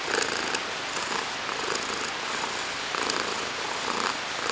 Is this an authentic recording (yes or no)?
yes